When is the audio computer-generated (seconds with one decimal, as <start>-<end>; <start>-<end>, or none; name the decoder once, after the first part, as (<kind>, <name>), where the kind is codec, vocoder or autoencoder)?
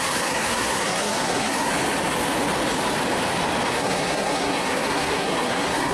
0.0-1.7 (codec, SNAC); 3.7-5.9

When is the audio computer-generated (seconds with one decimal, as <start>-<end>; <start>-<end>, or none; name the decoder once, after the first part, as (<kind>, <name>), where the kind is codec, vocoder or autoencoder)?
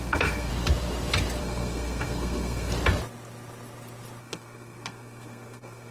0.0-0.5 (codec, SNAC); 1.4-2.7; 4.2-5.9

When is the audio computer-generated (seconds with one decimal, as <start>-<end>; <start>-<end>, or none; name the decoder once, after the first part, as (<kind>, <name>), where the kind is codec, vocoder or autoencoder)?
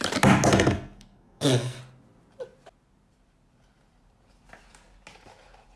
0.5-1.8 (codec, SNAC)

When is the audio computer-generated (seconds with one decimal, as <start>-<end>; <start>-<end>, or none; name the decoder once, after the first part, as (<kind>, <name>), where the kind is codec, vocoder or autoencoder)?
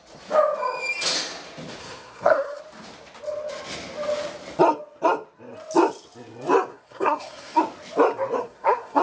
1.8-2.6 (codec, SNAC); 6.7-7.6; 8.4-9.0